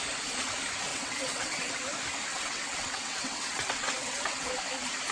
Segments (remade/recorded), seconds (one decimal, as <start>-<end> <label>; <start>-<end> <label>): 0.0-0.9 recorded; 0.9-1.7 remade; 1.7-2.3 recorded; 2.3-4.5 remade; 4.5-5.1 recorded